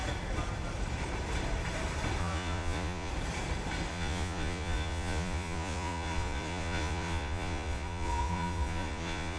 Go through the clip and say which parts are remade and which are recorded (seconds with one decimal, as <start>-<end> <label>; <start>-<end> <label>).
0.0-2.2 recorded; 2.2-3.1 remade; 3.1-3.9 recorded; 3.9-9.4 remade